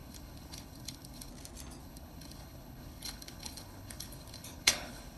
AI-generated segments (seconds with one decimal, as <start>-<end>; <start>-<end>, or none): 0.0-1.3; 1.8-5.2